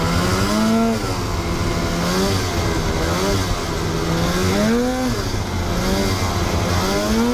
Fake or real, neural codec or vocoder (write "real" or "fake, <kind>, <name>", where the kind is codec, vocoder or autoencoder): real